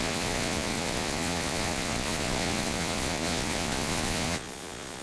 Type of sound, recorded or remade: remade